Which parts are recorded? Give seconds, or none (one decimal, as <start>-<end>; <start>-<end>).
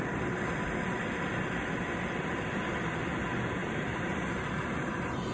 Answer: 0.0-3.6; 4.2-5.3